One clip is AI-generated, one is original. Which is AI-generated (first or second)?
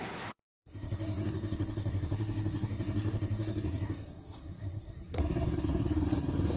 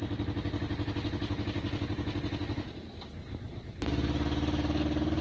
first